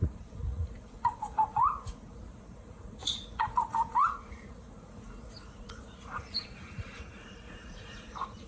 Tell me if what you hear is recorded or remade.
remade